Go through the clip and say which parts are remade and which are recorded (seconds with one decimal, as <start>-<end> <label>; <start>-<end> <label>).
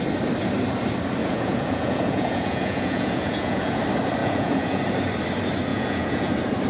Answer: 0.0-1.2 recorded; 1.2-3.8 remade; 3.8-4.2 recorded; 4.2-4.8 remade; 4.8-5.7 recorded; 5.7-6.3 remade; 6.3-6.7 recorded